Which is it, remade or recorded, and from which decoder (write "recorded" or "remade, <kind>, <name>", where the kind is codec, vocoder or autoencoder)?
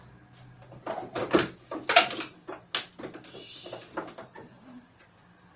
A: recorded